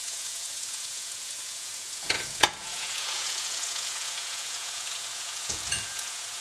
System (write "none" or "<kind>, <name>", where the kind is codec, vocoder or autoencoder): vocoder, Vocos